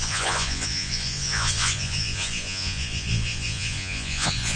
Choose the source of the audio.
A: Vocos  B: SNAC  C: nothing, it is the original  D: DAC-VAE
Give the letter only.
A